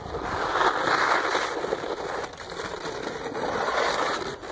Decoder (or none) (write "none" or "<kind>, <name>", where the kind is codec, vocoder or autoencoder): none